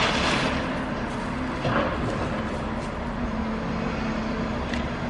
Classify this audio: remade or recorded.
recorded